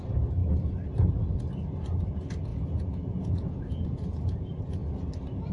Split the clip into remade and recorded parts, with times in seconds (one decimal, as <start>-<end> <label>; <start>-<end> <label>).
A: 0.0-2.5 recorded; 2.5-4.2 remade; 4.2-5.5 recorded